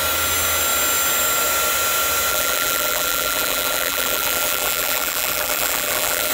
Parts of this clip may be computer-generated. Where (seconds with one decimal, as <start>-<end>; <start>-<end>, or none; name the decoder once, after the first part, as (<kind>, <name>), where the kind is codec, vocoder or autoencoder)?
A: 2.3-6.3 (vocoder, BigVGAN v2)

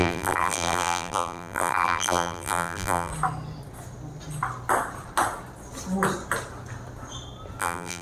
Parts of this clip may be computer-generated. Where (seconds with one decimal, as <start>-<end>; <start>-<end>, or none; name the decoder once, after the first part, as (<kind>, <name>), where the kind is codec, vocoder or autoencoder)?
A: 0.0-3.1 (vocoder, BigVGAN v2); 7.6-8.0

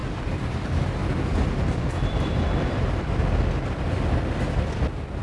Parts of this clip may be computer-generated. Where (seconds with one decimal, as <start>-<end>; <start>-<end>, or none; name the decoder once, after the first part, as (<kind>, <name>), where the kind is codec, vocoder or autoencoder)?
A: 0.0-3.1 (vocoder, BigVGAN v2)

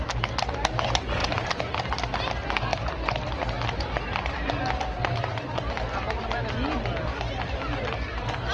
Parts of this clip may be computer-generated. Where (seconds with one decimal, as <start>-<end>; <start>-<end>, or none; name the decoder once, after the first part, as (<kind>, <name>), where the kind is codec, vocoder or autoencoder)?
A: none

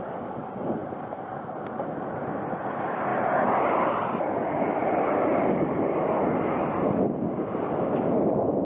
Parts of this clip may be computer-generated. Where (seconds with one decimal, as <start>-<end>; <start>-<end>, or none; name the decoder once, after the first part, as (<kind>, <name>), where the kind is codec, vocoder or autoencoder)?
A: 0.8-1.3 (vocoder, BigVGAN v2); 4.8-6.0

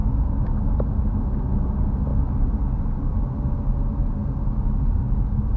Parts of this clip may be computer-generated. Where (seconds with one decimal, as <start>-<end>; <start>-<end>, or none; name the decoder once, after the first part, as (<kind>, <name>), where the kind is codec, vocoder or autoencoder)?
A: none

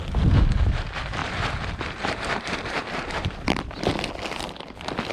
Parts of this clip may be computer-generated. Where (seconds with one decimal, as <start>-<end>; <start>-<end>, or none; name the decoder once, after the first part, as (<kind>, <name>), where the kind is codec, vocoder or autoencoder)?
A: 1.2-3.7 (vocoder, BigVGAN v2)

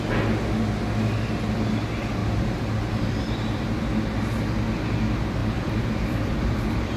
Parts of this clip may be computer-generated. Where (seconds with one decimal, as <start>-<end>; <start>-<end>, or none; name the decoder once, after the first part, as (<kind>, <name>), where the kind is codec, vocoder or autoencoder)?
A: 2.2-4.2 (vocoder, BigVGAN v2); 5.4-7.0